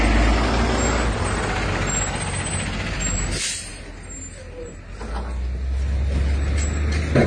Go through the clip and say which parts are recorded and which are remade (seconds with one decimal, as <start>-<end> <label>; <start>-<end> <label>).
0.0-7.3 recorded